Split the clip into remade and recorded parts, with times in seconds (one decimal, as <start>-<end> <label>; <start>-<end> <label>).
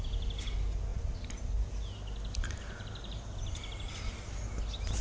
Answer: 0.0-5.0 recorded